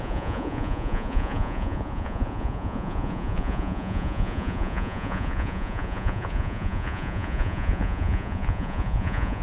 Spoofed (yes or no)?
yes